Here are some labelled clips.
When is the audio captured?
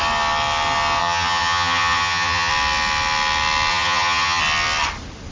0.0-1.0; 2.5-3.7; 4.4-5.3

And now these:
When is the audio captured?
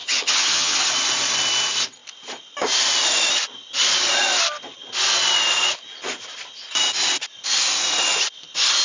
0.9-8.8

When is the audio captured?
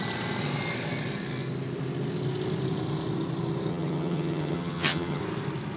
0.0-3.7; 5.2-5.8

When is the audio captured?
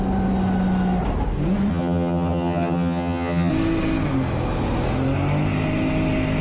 0.0-1.7; 3.5-6.4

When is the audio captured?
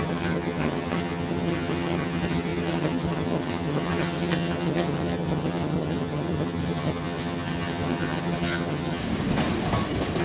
9.0-10.2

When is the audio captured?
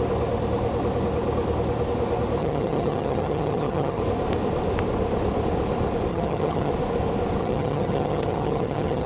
0.0-2.4; 4.0-6.1; 6.7-7.4